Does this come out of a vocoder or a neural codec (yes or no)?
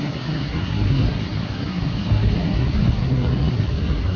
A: yes